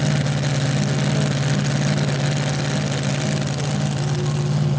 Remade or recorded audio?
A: recorded